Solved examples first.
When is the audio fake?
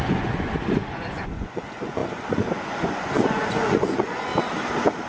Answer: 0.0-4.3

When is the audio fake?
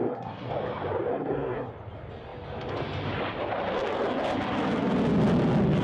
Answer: 0.0-0.5; 1.1-1.7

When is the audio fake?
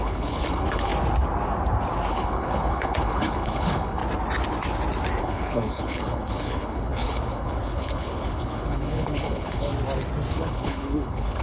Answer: 0.0-0.9; 2.1-4.0; 5.2-9.7; 10.3-11.4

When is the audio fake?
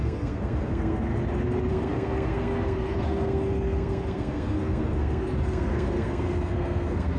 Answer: 0.0-1.1; 1.7-7.2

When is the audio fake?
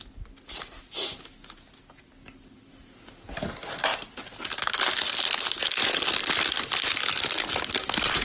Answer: none